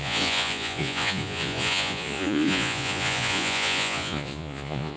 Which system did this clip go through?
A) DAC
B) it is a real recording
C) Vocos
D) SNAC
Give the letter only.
C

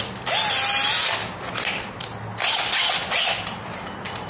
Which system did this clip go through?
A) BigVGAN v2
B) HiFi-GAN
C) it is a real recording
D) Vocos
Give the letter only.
C